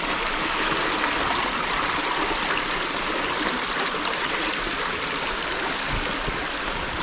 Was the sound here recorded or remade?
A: recorded